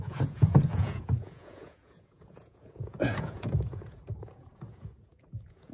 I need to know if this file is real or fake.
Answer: fake